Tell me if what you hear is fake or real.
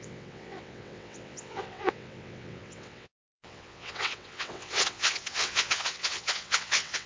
fake